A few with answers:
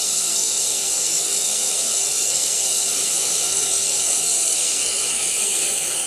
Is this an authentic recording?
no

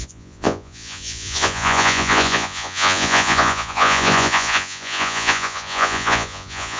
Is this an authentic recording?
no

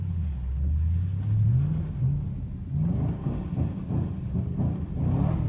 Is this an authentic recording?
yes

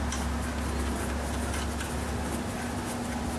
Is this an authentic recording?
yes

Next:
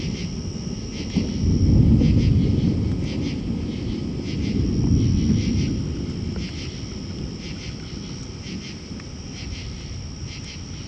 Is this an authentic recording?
yes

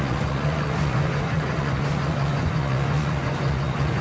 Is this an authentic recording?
no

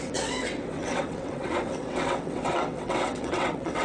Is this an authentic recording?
no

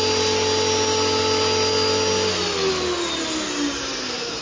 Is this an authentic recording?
yes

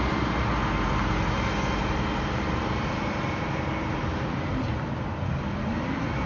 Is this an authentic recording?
yes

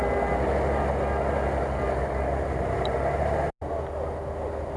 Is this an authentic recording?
yes